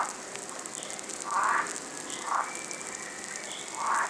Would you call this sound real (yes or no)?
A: yes